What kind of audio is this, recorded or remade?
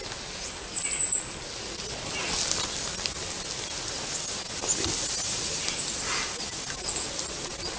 recorded